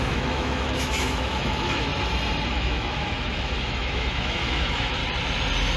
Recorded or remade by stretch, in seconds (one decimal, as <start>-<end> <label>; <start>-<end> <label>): 0.0-1.9 remade; 1.9-2.5 recorded; 2.5-5.0 remade; 5.0-5.8 recorded